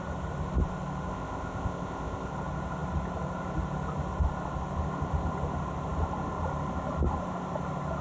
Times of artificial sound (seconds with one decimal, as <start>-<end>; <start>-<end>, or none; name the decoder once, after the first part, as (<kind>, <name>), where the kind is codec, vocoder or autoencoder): 1.1-2.3 (codec, ZipCodec)